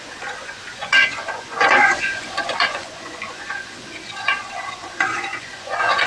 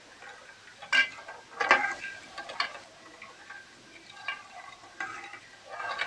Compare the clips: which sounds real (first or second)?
second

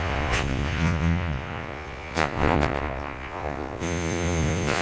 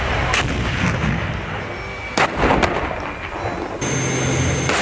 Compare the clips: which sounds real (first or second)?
second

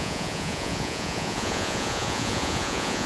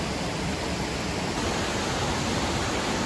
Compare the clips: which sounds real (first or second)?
second